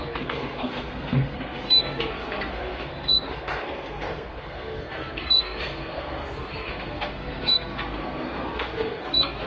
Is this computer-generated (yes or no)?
yes